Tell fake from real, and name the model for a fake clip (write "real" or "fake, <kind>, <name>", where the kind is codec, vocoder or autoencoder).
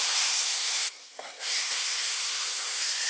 fake, codec, SNAC